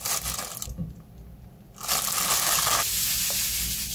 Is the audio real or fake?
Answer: real